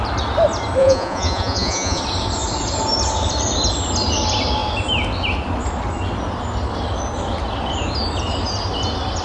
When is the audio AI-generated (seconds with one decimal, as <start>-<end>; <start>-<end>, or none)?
0.8-2.0